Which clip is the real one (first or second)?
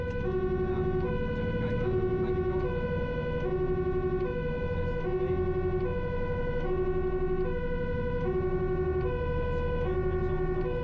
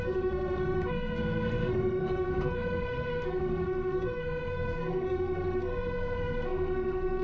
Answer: first